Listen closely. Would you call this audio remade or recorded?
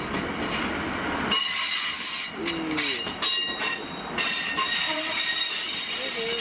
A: recorded